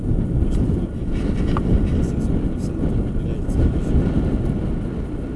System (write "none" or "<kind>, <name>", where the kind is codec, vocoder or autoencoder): none